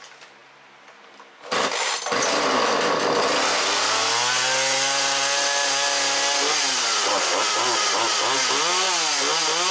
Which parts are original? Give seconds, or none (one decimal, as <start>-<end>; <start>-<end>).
0.0-9.7